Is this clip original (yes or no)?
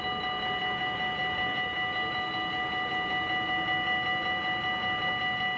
yes